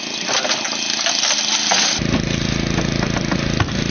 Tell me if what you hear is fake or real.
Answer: real